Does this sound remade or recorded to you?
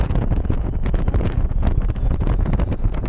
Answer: remade